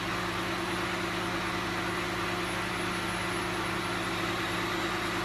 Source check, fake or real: real